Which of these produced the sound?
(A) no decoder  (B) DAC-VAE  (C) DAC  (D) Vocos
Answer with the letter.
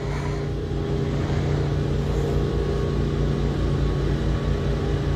A